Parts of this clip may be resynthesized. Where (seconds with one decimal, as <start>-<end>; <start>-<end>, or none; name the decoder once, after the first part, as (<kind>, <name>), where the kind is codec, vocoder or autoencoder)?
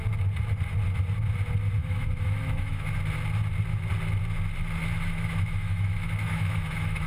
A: 1.8-2.9 (autoencoder, DAC-VAE); 5.1-7.1